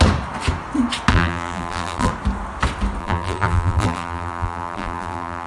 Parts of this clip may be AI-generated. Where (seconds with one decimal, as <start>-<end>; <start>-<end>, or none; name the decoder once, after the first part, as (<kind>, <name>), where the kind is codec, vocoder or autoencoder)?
1.1-2.1 (vocoder, BigVGAN v2); 3.0-5.5